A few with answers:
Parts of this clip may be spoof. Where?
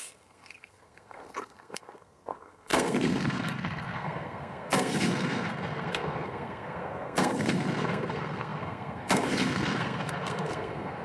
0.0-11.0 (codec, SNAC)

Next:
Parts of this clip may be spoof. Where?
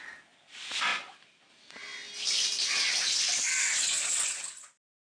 none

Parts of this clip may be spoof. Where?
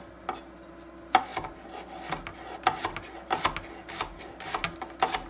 none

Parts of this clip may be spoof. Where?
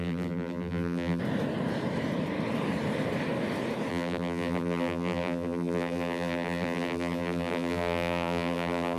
0.0-1.2 (vocoder, BigVGAN v2); 3.9-9.0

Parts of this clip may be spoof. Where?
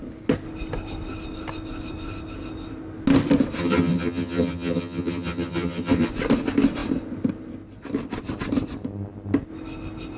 3.6-6.1 (vocoder, HiFi-GAN)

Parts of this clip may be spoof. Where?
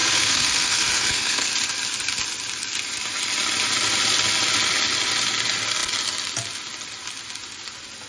0.0-1.5 (codec, SNAC)